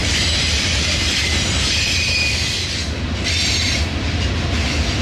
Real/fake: real